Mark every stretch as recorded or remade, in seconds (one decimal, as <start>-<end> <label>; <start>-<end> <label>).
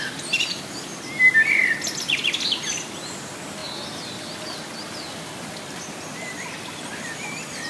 0.0-7.7 recorded